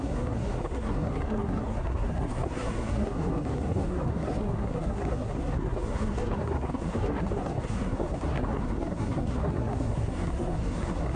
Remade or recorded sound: remade